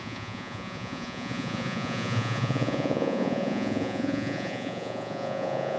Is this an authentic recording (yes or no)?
no